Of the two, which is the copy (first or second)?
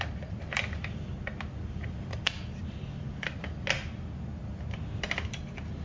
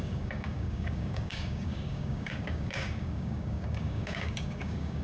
second